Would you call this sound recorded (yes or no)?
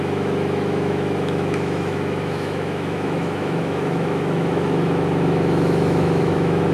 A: no